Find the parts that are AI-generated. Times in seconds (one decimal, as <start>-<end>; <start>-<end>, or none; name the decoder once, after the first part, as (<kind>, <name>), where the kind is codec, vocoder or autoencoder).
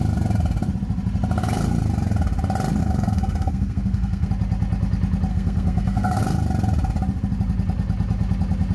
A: 2.8-4.3 (codec, SNAC); 5.3-6.2